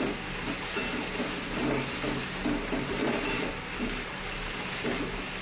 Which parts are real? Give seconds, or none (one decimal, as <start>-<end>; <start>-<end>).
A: 0.0-5.4